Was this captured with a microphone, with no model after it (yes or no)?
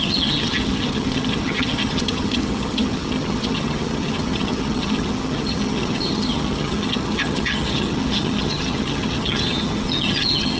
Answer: no